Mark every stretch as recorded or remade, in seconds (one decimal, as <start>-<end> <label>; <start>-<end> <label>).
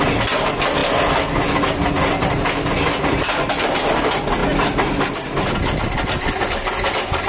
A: 0.0-7.3 recorded